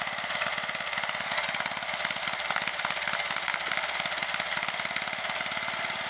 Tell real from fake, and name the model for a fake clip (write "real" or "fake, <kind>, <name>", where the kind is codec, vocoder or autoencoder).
real